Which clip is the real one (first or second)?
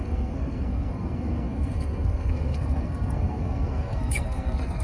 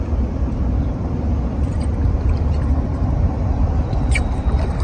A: second